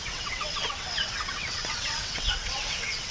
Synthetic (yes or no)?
yes